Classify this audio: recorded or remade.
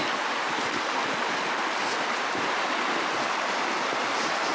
recorded